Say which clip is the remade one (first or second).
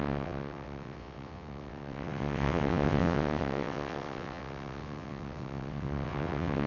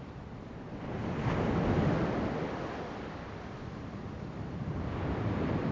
first